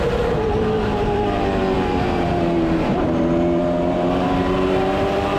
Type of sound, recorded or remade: remade